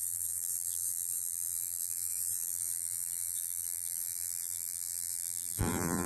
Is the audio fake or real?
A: fake